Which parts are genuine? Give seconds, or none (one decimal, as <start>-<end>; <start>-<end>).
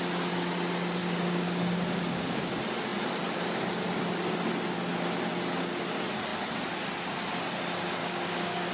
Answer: 0.0-1.0; 2.5-8.0